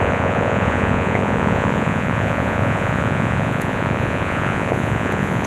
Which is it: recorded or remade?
remade